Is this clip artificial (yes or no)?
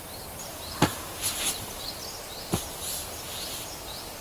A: no